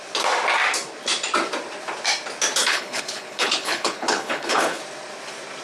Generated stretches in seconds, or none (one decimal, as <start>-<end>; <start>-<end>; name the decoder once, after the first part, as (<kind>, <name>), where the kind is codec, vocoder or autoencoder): 2.6-4.8 (codec, HILCodec)